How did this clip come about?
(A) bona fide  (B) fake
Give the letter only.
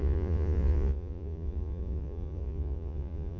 B